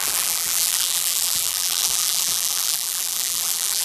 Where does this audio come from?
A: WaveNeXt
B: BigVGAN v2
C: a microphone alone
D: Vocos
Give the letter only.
B